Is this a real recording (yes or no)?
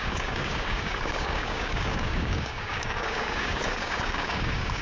no